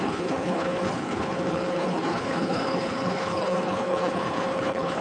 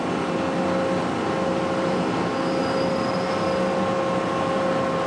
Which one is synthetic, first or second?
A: first